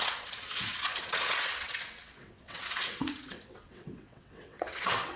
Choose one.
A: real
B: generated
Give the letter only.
B